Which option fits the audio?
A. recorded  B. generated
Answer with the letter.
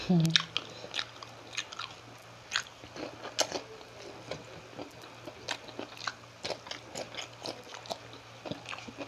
A